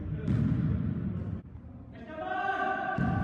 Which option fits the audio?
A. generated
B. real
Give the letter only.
B